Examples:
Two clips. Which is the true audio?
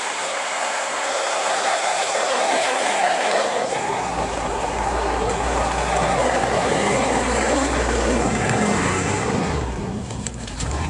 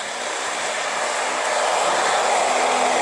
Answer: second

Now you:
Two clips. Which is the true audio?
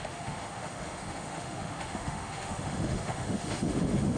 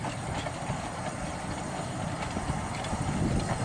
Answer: second